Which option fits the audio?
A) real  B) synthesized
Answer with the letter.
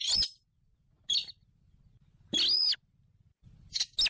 A